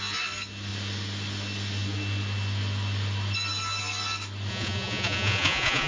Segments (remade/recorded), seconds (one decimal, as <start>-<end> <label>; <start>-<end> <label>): 0.0-4.5 recorded; 4.5-5.9 remade